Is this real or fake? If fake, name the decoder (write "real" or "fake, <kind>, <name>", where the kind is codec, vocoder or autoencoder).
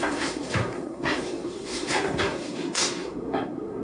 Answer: fake, codec, SNAC